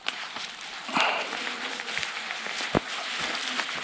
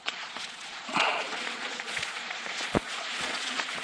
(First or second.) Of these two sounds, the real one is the first